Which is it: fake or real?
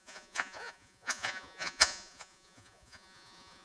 fake